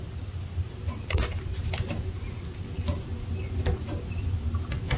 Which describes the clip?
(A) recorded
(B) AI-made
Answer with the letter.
A